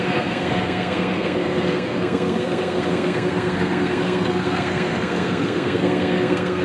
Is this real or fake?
fake